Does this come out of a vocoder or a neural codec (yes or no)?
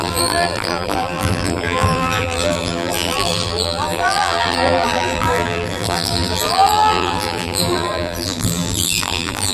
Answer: yes